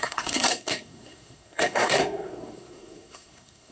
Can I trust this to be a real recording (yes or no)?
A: no